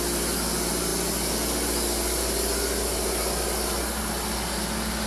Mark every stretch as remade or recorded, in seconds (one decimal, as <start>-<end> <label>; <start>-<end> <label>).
0.0-5.1 recorded